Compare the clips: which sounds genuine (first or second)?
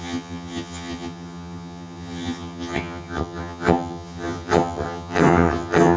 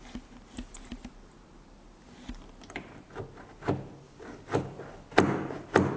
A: second